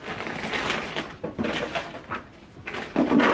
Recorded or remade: recorded